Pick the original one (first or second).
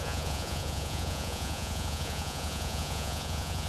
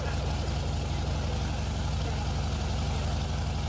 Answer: second